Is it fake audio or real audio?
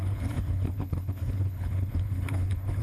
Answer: fake